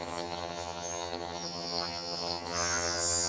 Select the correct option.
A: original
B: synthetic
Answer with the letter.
B